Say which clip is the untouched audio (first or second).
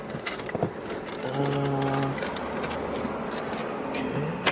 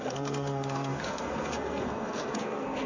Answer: first